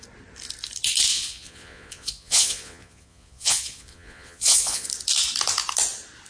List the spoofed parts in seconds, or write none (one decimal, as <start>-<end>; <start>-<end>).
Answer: 1.1-4.9